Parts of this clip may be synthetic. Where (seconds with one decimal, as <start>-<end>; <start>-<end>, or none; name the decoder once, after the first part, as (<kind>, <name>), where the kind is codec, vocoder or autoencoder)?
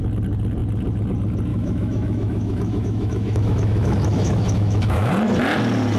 1.5-5.1 (autoencoder, DAC-VAE)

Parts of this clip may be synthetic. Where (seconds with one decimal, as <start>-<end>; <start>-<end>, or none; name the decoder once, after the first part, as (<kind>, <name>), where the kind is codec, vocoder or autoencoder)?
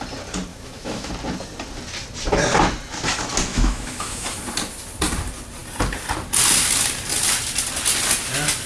0.5-1.1 (autoencoder, DAC-VAE); 3.5-4.4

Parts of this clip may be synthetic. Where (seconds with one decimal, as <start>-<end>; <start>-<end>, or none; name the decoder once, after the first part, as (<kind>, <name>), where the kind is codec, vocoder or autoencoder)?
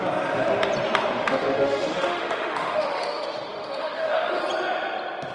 1.2-4.4 (autoencoder, DAC-VAE)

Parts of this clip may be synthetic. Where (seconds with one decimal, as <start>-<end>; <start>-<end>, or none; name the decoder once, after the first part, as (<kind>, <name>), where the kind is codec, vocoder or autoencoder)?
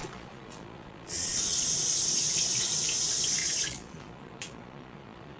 0.0-2.7 (vocoder, Vocos); 3.4-5.4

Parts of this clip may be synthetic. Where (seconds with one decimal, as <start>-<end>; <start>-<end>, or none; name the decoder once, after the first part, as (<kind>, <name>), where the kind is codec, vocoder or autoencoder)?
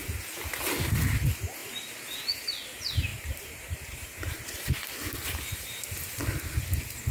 3.1-6.2 (vocoder, BigVGAN v2)